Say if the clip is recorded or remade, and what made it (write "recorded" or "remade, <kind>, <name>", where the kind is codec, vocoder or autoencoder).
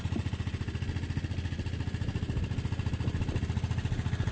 recorded